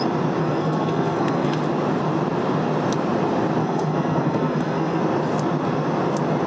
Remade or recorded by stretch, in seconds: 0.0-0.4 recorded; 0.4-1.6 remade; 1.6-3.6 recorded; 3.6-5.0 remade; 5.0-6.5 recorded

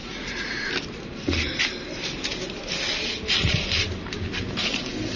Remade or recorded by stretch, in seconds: 0.0-0.7 remade; 0.7-5.2 recorded

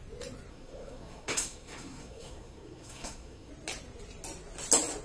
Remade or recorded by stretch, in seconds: 0.0-0.5 recorded; 0.5-3.5 remade; 3.5-5.0 recorded